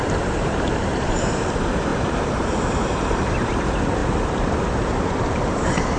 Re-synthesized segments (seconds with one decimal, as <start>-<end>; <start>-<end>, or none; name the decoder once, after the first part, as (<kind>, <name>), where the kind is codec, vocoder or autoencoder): 0.0-6.0 (vocoder, BigVGAN v2)